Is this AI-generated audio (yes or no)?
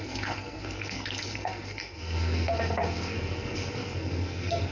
yes